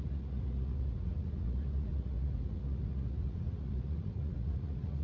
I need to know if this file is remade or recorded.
remade